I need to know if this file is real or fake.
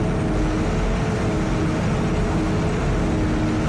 real